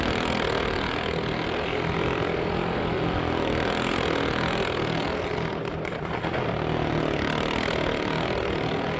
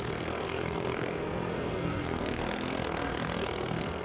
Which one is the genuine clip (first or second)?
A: first